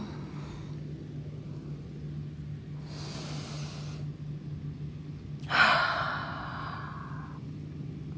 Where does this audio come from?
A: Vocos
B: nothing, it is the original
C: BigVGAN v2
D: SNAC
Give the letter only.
B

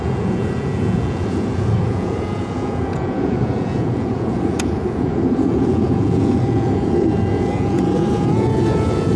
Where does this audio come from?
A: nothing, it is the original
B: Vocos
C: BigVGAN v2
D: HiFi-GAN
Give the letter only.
B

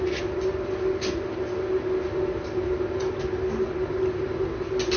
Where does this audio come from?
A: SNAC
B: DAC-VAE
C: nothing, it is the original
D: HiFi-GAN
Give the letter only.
C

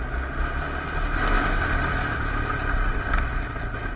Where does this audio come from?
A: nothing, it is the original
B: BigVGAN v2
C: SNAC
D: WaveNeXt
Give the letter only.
A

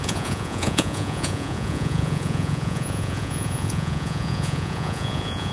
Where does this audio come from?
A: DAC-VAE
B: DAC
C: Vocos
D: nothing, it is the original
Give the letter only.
C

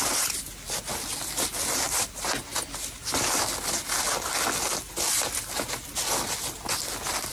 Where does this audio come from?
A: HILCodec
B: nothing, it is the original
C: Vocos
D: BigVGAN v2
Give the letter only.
B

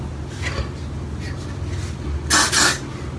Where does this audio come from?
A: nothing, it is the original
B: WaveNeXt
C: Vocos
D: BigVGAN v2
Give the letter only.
A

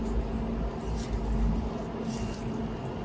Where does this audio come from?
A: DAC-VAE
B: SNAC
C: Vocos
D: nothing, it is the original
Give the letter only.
D